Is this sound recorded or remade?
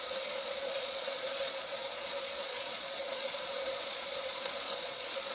remade